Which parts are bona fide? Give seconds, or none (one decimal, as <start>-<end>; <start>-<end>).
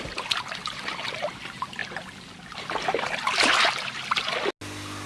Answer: 0.0-5.1